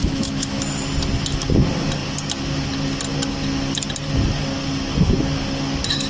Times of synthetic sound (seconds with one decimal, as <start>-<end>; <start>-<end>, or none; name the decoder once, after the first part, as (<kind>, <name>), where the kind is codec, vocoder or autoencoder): 0.0-0.6 (autoencoder, DAC-VAE)